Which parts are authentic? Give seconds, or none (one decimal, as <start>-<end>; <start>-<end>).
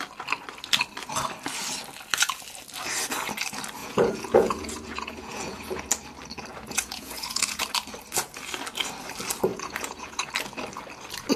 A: 0.0-3.8; 5.9-6.5; 7.6-9.5; 10.3-11.4